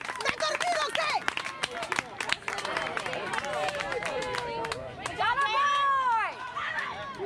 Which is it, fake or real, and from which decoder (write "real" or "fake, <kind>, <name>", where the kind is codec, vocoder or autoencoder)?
real